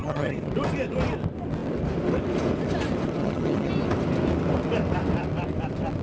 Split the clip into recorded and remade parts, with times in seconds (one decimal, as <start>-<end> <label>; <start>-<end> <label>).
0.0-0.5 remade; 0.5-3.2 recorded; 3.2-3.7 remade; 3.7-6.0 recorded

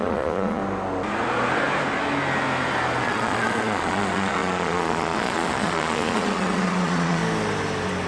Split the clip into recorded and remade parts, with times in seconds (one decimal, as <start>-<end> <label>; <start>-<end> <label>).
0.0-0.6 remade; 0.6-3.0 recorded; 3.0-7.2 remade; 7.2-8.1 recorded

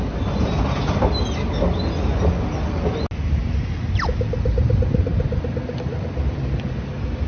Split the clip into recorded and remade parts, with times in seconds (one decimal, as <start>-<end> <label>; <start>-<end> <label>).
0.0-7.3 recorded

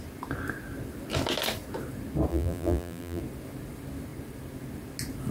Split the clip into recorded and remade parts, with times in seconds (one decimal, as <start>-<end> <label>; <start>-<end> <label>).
0.0-2.3 recorded; 2.3-3.2 remade; 3.2-5.3 recorded

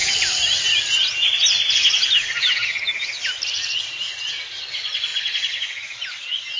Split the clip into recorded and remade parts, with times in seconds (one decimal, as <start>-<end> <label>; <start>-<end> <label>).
0.0-6.6 recorded

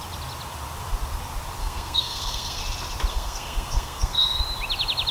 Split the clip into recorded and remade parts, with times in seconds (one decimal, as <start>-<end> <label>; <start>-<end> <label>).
0.0-1.6 recorded; 1.6-2.6 remade; 2.6-3.1 recorded; 3.1-4.4 remade; 4.4-5.1 recorded